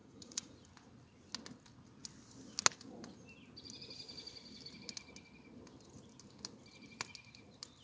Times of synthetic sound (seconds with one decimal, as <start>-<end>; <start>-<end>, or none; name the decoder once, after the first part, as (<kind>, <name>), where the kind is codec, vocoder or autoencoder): 0.0-0.5 (vocoder, Vocos)